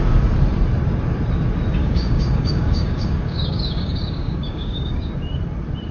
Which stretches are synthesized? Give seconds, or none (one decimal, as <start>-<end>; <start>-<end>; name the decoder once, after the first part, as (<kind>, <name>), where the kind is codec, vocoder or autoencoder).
1.8-5.1 (codec, DAC)